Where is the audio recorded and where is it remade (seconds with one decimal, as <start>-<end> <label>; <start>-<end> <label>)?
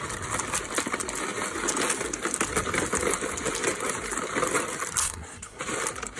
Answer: 0.0-5.0 recorded; 5.0-5.6 remade; 5.6-6.2 recorded